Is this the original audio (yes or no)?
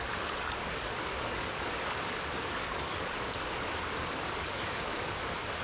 no